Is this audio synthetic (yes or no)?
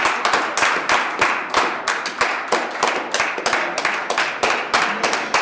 no